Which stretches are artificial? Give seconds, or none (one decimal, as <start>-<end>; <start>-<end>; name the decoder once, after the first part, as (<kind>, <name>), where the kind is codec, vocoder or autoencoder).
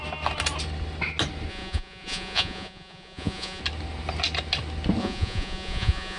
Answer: 1.5-3.6 (vocoder, Vocos); 5.0-6.2